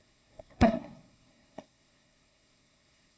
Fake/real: fake